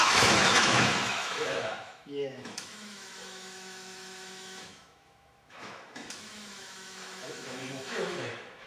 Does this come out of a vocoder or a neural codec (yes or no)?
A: yes